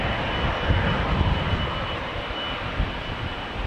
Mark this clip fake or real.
real